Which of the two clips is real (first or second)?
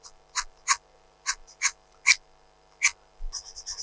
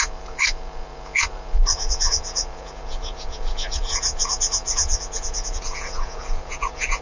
first